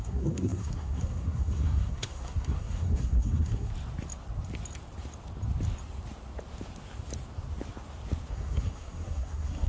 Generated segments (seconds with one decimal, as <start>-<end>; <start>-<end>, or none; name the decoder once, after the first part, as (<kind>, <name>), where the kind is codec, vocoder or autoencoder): 0.0-3.7 (codec, SNAC); 8.3-9.7